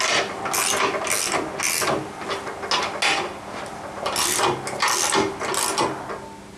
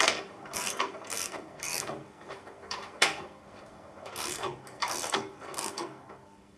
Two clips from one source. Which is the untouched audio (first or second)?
first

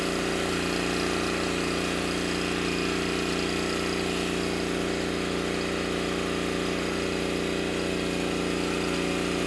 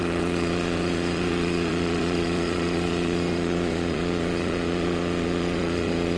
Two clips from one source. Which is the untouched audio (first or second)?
first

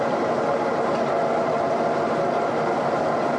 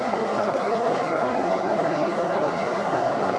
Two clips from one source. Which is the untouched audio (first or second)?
first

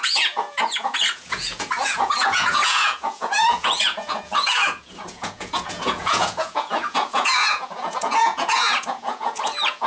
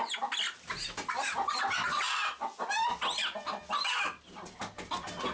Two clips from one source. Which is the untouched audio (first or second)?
second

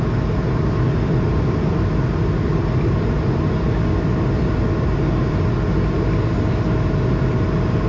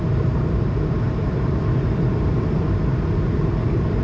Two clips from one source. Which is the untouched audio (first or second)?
first